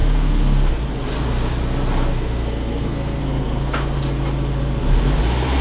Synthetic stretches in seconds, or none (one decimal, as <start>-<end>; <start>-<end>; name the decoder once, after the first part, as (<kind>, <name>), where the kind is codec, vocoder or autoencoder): 0.0-0.7 (codec, SNAC); 2.1-4.0